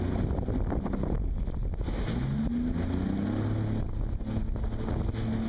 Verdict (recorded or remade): recorded